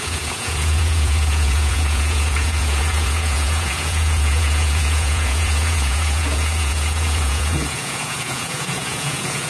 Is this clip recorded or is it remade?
remade